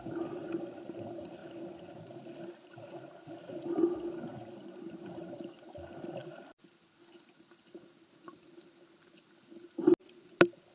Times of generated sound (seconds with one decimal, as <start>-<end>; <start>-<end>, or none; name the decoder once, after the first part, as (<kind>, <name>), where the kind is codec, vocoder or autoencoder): none